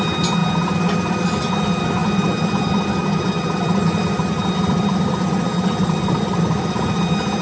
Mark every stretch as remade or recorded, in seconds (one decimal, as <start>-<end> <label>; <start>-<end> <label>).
0.0-0.4 recorded; 0.4-1.2 remade; 1.2-2.0 recorded; 2.0-6.4 remade; 6.4-7.4 recorded